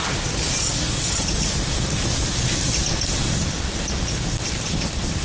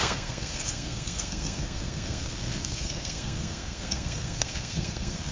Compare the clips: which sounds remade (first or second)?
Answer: second